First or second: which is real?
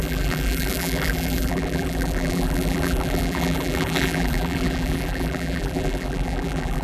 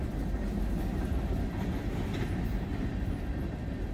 second